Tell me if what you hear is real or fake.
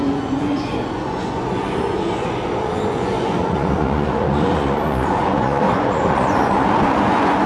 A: fake